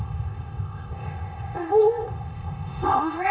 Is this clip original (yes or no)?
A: no